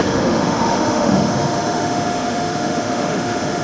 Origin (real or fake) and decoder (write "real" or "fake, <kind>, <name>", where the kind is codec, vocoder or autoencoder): fake, autoencoder, DAC-VAE